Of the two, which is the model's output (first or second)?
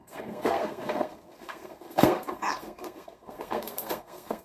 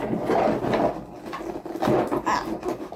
first